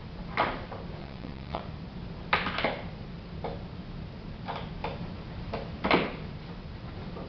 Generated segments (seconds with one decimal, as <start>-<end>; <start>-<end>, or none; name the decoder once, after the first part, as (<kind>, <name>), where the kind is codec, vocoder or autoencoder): 1.0-1.6 (vocoder, WaveNeXt)

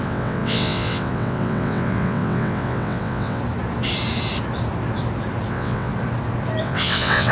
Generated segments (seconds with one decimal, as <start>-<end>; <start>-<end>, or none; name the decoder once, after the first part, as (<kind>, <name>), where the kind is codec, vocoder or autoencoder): 0.0-3.4 (vocoder, WaveNeXt); 5.5-5.9; 6.6-7.3

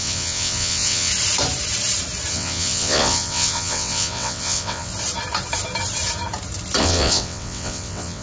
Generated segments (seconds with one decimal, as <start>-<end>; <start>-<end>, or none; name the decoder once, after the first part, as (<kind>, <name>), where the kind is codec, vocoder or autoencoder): 0.0-1.1 (vocoder, WaveNeXt); 2.3-4.9; 6.8-8.2

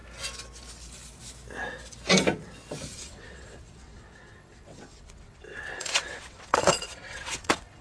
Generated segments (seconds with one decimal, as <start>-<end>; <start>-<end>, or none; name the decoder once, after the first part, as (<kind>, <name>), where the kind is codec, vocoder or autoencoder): 2.9-7.8 (vocoder, WaveNeXt)

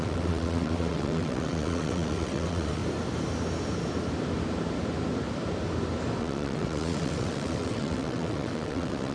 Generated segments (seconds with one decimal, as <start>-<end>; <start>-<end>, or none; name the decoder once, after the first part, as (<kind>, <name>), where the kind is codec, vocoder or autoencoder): 0.0-2.8 (vocoder, WaveNeXt); 6.2-9.1

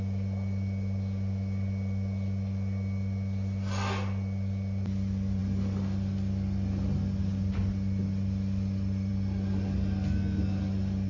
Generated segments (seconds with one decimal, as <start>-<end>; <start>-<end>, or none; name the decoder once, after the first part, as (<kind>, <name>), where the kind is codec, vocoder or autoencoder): none